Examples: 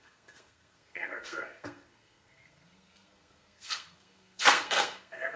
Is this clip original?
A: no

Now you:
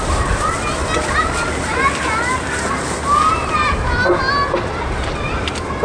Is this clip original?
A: yes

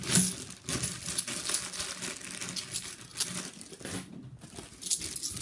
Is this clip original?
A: yes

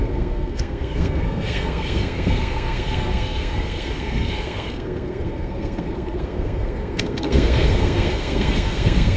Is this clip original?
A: no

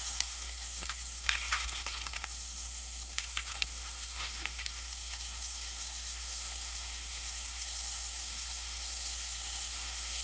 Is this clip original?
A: no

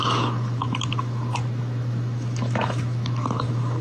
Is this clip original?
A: no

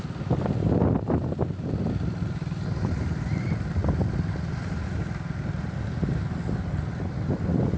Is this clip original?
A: yes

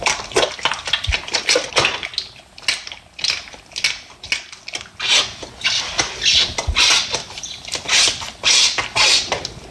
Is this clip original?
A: yes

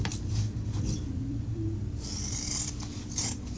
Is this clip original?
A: no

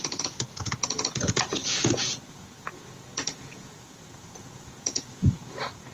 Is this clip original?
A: no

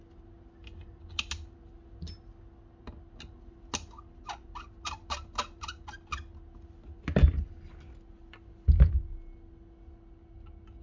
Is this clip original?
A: yes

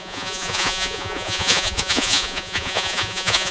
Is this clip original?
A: no